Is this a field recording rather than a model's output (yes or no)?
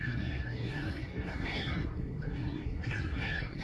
no